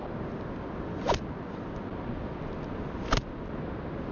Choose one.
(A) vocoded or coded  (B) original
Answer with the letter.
B